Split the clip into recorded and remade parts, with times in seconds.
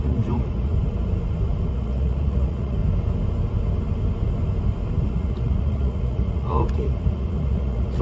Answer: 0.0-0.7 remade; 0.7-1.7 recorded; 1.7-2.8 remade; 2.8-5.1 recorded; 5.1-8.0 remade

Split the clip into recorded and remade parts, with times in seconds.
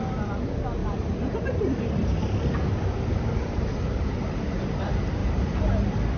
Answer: 0.0-0.8 recorded; 0.8-2.4 remade; 2.4-3.4 recorded; 3.4-4.6 remade; 4.6-5.2 recorded; 5.2-5.7 remade; 5.7-6.2 recorded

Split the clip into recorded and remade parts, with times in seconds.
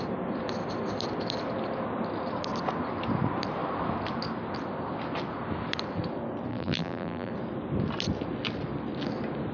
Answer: 0.0-6.5 recorded; 6.5-7.3 remade; 7.3-9.5 recorded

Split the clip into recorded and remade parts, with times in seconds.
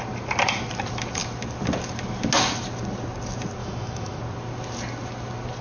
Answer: 0.0-3.6 recorded; 3.6-4.2 remade; 4.2-5.6 recorded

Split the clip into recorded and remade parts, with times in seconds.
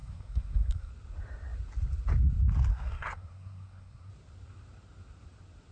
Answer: 0.0-0.9 remade; 0.9-2.7 recorded; 2.7-4.1 remade; 4.1-5.7 recorded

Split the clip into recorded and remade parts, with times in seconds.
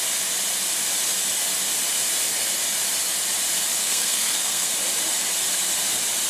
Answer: 0.0-3.8 recorded; 3.8-4.7 remade; 4.7-6.3 recorded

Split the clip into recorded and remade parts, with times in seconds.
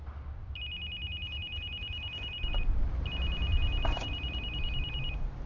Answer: 0.0-5.5 recorded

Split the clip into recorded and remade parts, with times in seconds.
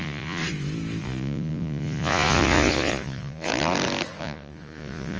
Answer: 0.0-0.4 remade; 0.4-1.0 recorded; 1.0-3.5 remade; 3.5-4.2 recorded; 4.2-5.2 remade